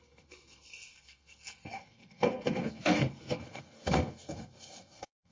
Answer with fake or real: fake